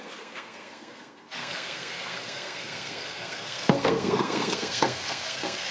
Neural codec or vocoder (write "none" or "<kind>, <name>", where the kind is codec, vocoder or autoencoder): codec, SNAC